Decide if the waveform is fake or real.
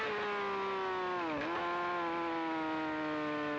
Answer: real